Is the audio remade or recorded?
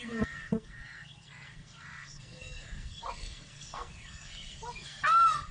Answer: remade